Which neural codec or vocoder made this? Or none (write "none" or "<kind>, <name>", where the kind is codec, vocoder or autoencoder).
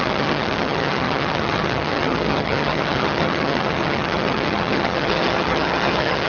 vocoder, HiFi-GAN